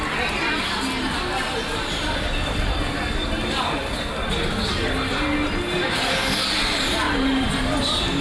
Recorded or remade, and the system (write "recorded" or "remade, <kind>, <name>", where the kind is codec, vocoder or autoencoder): recorded